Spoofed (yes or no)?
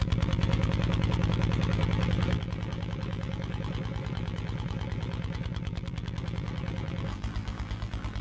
yes